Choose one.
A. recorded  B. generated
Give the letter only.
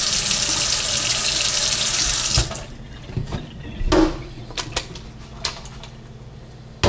A